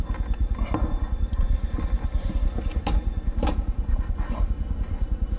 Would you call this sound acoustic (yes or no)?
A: yes